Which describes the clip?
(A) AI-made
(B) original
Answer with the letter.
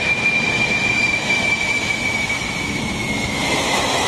A